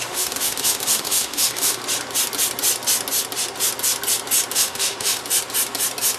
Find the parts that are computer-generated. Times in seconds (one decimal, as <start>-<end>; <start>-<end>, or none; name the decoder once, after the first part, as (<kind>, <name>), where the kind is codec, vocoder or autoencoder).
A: 0.0-1.8 (autoencoder, DAC-VAE); 4.5-5.2